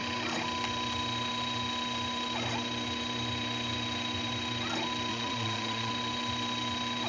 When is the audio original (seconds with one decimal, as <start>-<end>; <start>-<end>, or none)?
0.0-5.1; 5.9-7.1